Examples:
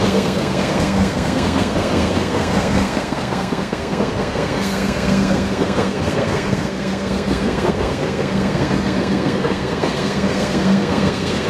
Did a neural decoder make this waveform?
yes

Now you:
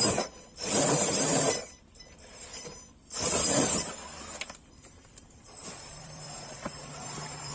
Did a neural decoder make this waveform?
yes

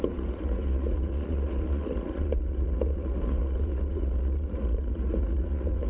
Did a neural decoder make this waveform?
yes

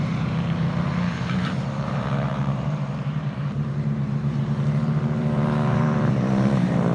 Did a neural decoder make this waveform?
yes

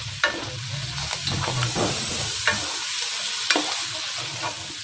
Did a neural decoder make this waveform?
no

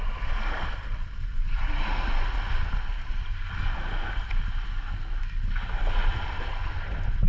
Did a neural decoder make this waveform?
no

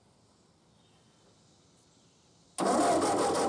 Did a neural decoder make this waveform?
no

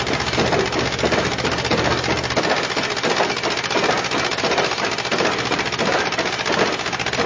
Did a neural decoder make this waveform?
no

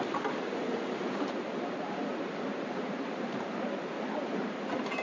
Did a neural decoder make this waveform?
yes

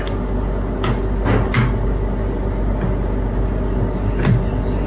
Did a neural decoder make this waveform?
no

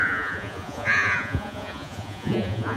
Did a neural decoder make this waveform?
yes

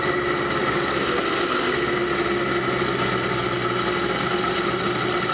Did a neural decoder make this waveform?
no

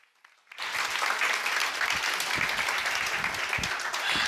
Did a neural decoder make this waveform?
no